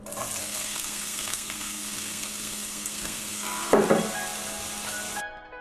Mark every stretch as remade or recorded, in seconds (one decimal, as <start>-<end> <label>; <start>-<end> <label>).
0.0-0.4 recorded; 0.4-3.8 remade; 3.8-5.6 recorded